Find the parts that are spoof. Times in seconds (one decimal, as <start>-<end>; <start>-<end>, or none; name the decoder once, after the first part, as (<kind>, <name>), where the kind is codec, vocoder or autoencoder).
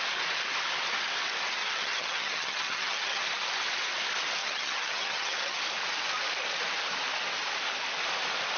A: 1.6-3.2 (vocoder, HiFi-GAN); 4.4-5.6